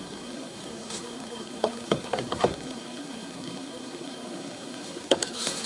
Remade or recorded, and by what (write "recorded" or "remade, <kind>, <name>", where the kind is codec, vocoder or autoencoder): remade, codec, SNAC